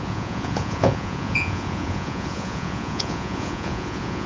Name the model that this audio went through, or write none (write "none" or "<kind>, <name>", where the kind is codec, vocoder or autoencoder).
vocoder, Vocos